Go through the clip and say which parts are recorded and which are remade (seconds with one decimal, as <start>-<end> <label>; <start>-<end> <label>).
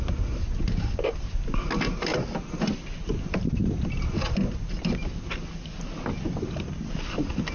0.0-7.5 recorded